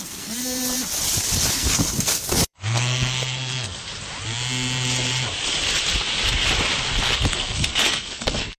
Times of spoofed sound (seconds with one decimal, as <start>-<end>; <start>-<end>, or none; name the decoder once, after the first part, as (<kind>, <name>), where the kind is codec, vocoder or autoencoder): 0.0-0.4 (codec, SNAC); 1.5-3.8; 7.0-8.6